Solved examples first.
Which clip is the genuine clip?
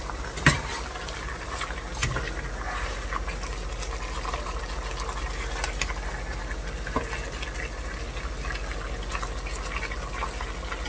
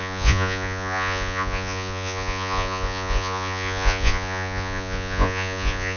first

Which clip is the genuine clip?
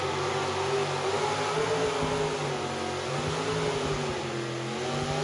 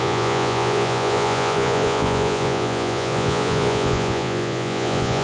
first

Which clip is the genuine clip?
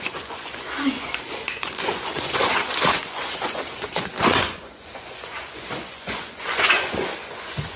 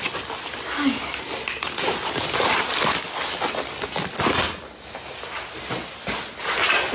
second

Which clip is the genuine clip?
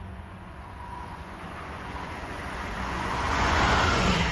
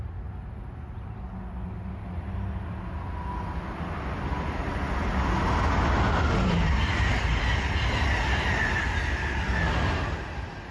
second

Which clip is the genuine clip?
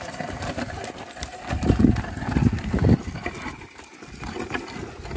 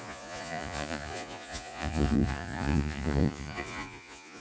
first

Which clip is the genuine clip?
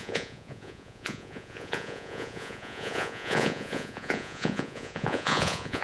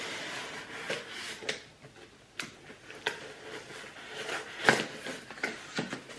second